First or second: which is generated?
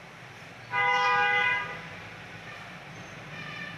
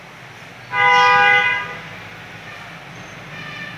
first